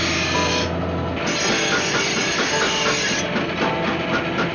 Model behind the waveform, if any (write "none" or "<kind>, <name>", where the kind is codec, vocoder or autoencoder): none